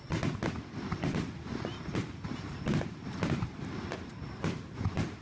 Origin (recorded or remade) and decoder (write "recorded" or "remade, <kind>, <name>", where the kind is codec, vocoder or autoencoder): remade, vocoder, BigVGAN v2